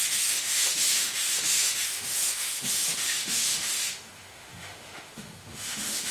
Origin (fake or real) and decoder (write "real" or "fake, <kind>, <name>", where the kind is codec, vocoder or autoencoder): fake, autoencoder, DAC-VAE